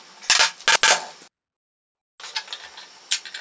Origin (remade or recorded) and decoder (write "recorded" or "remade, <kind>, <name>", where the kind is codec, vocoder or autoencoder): recorded